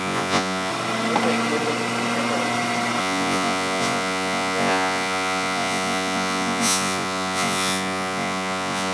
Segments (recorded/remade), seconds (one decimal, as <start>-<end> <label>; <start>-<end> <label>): 0.0-0.7 remade; 0.7-3.0 recorded; 3.0-8.9 remade